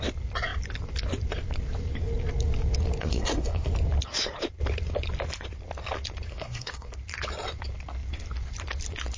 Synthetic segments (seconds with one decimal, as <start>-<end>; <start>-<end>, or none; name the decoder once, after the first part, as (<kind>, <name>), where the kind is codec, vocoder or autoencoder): 3.0-3.7 (codec, SNAC); 6.3-6.9